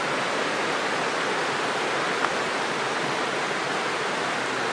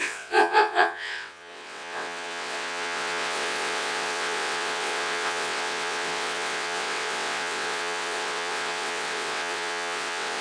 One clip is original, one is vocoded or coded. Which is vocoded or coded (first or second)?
second